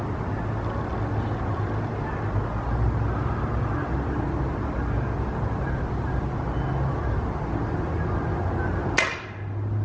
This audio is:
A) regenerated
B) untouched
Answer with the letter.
B